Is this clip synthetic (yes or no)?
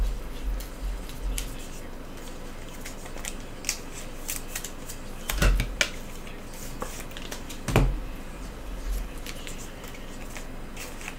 no